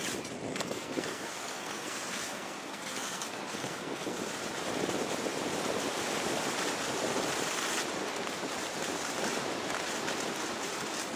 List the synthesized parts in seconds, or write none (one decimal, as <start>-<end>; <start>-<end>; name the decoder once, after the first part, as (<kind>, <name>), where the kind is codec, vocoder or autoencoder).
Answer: 0.5-4.3 (codec, SNAC)